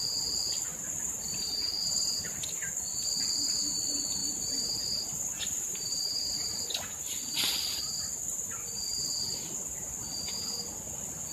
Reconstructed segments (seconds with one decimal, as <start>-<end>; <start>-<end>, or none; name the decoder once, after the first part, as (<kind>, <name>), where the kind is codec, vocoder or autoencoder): 0.7-2.7 (vocoder, BigVGAN v2); 4.2-7.0